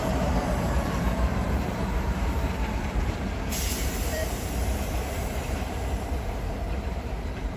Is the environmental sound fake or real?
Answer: fake